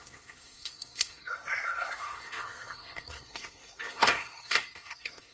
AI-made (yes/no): yes